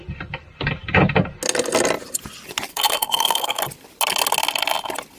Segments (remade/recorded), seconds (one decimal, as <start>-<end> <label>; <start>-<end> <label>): 0.0-2.7 recorded; 2.7-3.6 remade; 3.6-5.2 recorded